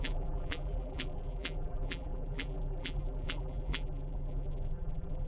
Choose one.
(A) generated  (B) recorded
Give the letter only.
A